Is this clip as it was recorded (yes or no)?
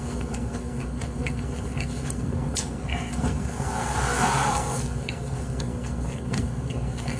no